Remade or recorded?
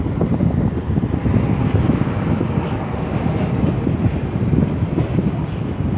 recorded